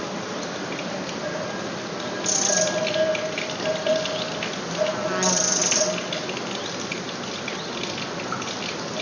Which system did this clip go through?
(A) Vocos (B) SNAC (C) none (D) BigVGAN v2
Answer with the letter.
C